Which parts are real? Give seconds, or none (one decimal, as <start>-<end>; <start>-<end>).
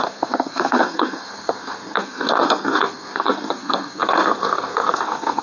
none